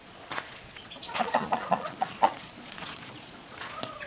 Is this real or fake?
fake